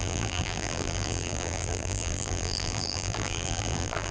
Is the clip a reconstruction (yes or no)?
yes